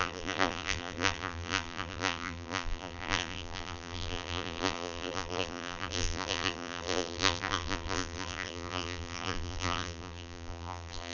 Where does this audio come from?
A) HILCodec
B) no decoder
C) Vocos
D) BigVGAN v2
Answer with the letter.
D